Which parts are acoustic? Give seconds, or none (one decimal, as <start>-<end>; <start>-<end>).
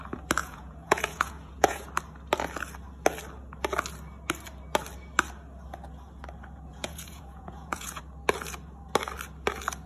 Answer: 0.0-0.4; 1.9-6.7; 8.0-9.9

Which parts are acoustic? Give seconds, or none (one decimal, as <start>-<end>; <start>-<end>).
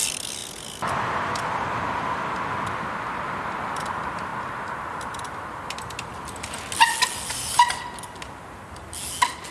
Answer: 0.0-9.5